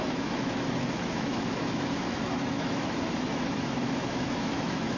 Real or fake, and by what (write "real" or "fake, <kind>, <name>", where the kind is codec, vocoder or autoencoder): fake, autoencoder, DAC-VAE